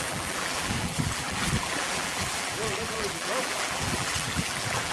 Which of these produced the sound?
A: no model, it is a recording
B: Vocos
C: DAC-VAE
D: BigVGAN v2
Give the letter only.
D